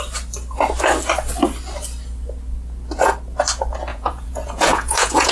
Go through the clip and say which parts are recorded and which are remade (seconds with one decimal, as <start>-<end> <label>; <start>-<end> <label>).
0.0-3.9 recorded; 3.9-5.3 remade